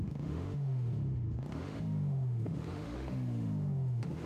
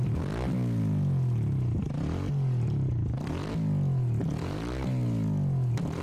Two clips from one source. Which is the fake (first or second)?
first